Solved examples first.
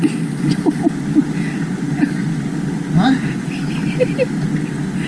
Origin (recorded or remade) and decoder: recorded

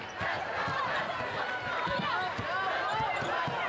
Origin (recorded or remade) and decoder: recorded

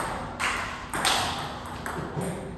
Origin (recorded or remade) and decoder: recorded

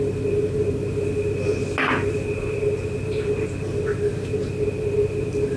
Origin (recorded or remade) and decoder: recorded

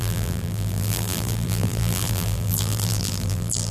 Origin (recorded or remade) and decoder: remade, vocoder, BigVGAN v2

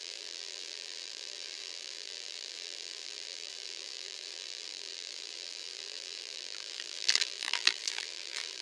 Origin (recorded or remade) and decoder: remade, vocoder, BigVGAN v2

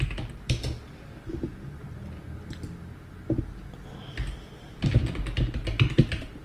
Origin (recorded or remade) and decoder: recorded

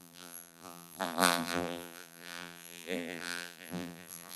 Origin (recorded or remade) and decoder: remade, vocoder, BigVGAN v2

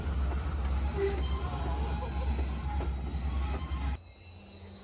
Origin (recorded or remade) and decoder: recorded